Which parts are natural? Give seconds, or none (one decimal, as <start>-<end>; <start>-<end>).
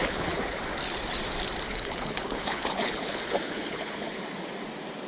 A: 0.6-1.7; 4.2-5.1